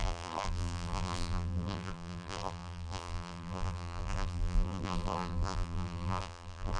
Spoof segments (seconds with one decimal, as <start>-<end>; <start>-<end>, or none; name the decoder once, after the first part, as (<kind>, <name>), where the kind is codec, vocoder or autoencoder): 0.0-6.8 (vocoder, BigVGAN v2)